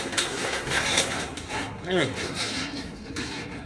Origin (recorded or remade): remade